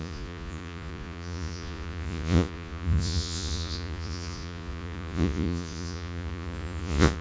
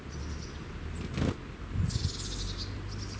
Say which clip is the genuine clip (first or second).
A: second